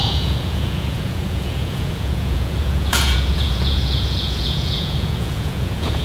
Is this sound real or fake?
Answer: fake